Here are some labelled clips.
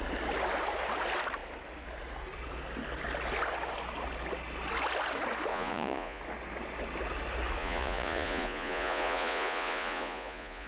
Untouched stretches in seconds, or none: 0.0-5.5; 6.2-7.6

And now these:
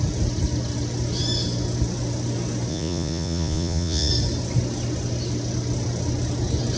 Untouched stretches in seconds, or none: 0.0-2.7; 4.1-6.8

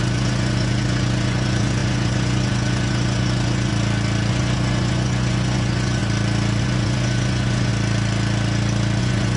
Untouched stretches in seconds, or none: 3.7-4.3; 6.0-6.6; 7.7-9.0

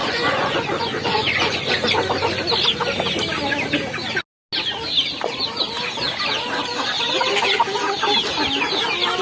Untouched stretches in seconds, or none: 1.6-9.2

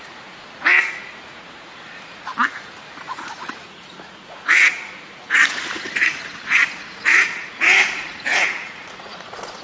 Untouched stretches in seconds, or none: 2.3-3.0

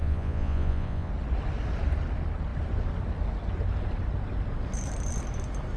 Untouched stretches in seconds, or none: 1.1-5.8

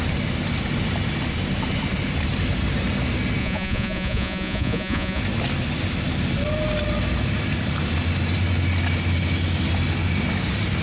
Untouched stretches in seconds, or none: 0.0-3.4; 5.2-10.8

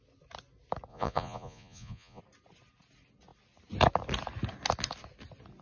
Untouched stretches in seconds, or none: 0.0-0.9; 2.2-5.6